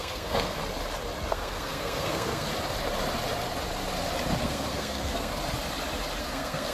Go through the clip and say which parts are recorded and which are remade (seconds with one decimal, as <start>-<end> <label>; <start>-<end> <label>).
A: 0.0-0.6 remade; 0.6-1.3 recorded; 1.3-2.5 remade; 2.5-4.4 recorded; 4.4-5.4 remade; 5.4-6.2 recorded; 6.2-6.7 remade

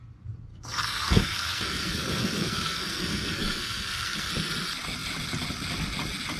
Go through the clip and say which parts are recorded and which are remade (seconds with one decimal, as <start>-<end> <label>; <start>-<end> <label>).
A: 0.0-0.5 recorded; 0.5-4.3 remade; 4.3-6.4 recorded

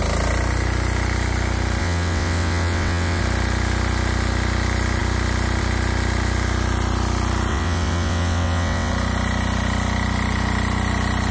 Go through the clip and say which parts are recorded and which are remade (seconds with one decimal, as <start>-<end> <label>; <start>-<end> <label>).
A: 0.0-1.8 recorded; 1.8-3.2 remade; 3.2-7.5 recorded; 7.5-8.9 remade; 8.9-11.3 recorded

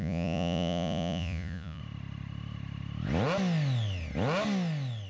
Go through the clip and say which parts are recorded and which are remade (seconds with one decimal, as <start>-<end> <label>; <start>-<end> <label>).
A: 0.0-1.8 remade; 1.8-5.1 recorded

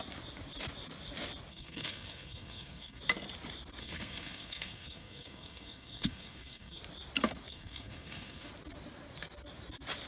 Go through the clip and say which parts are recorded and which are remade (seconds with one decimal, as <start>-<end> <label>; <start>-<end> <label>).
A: 0.0-1.5 recorded; 1.5-3.0 remade; 3.0-3.8 recorded; 3.8-6.8 remade; 6.8-7.5 recorded; 7.5-8.5 remade; 8.5-10.1 recorded

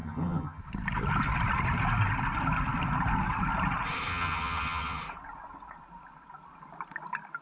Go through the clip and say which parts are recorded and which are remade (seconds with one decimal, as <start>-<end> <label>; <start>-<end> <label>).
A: 0.0-0.6 remade; 0.6-4.1 recorded; 4.1-5.0 remade; 5.0-7.4 recorded